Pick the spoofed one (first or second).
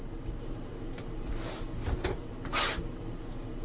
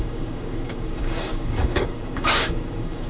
second